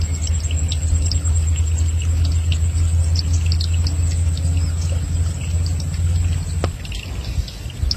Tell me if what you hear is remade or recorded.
recorded